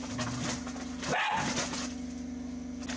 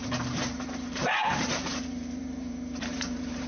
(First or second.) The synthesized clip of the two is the second